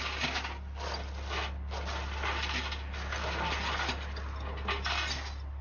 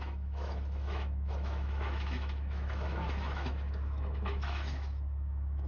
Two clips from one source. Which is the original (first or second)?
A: first